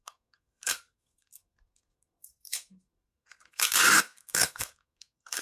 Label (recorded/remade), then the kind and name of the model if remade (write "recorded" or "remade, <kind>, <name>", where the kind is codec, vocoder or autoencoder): remade, codec, SNAC